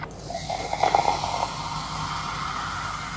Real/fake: real